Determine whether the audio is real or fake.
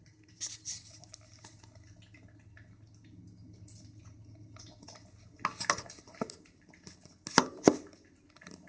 real